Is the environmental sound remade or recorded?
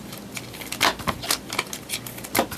recorded